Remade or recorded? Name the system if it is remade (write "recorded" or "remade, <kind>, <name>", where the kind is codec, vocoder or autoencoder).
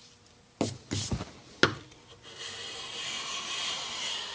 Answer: recorded